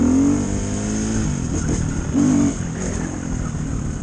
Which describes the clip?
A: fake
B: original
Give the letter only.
B